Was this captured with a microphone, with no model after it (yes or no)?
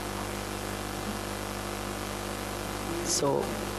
yes